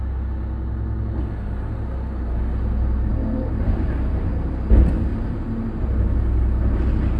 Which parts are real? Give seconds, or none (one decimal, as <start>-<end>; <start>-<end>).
0.0-3.1; 4.1-5.1; 5.8-7.2